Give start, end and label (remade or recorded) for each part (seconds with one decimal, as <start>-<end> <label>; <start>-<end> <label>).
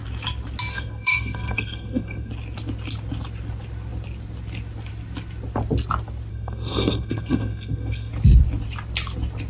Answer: 0.0-0.7 recorded; 0.7-2.3 remade; 2.3-6.3 recorded; 6.3-8.1 remade; 8.1-9.5 recorded